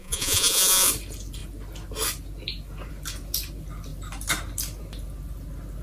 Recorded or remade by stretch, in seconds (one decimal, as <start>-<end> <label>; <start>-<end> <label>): 0.0-0.9 remade; 0.9-5.8 recorded